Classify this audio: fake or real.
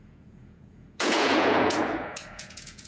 fake